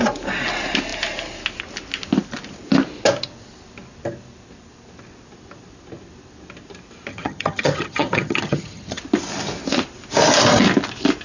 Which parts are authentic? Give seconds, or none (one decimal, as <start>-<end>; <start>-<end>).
0.0-7.1; 9.0-11.2